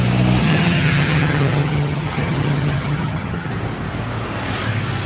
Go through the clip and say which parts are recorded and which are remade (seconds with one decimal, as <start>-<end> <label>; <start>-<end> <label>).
0.0-0.4 recorded; 0.4-3.5 remade; 3.5-5.1 recorded